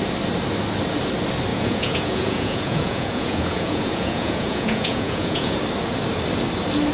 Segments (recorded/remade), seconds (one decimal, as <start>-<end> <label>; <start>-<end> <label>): 0.0-1.5 recorded; 1.5-5.6 remade; 5.6-6.9 recorded